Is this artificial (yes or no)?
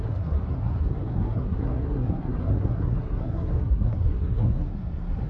yes